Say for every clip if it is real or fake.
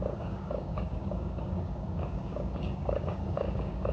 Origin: fake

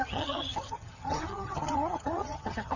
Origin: fake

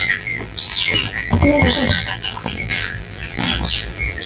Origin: fake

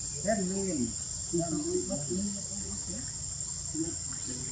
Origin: real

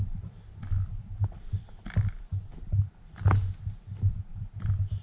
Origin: real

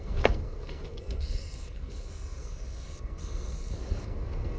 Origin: fake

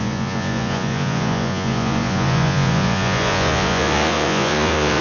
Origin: fake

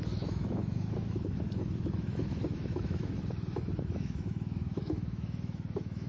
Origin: fake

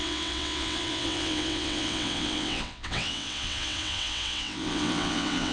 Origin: fake